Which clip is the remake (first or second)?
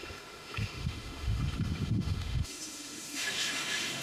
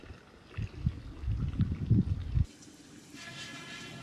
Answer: first